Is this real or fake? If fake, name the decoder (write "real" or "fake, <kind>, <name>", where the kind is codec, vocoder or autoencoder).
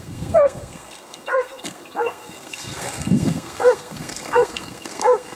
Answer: fake, codec, SNAC